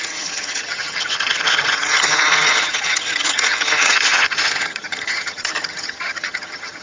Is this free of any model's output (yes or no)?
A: no